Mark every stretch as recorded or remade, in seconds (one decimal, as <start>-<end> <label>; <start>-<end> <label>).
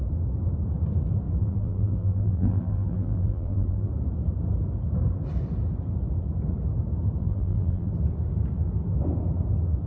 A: 0.0-1.4 recorded; 1.4-3.9 remade; 3.9-7.2 recorded; 7.2-7.9 remade; 7.9-9.9 recorded